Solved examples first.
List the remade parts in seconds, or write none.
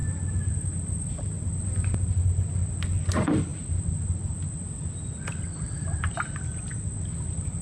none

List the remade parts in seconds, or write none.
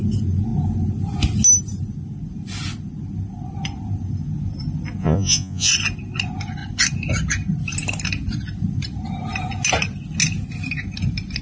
5.0-5.7 (vocoder, Vocos)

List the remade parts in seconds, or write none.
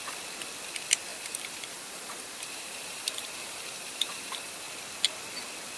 1.1-4.6 (vocoder, BigVGAN v2)